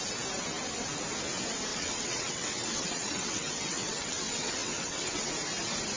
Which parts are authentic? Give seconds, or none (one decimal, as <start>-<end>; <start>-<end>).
0.0-1.7; 5.3-6.0